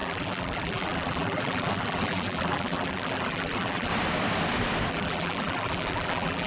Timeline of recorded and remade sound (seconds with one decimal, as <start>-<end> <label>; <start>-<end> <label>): 0.0-3.9 remade; 3.9-4.9 recorded; 4.9-6.5 remade